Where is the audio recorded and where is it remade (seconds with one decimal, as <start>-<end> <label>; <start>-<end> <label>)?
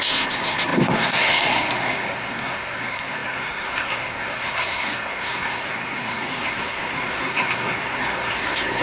0.0-8.8 remade